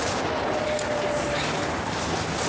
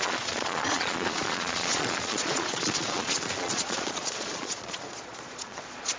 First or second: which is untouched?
first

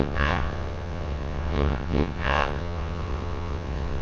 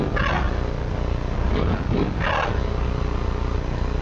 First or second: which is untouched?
second